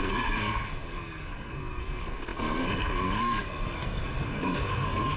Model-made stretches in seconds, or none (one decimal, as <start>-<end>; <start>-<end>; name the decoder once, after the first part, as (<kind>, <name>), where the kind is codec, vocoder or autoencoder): 0.0-5.2 (codec, SNAC)